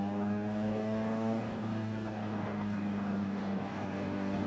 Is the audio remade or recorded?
remade